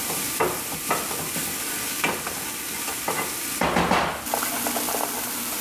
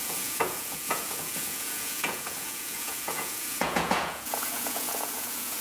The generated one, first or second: second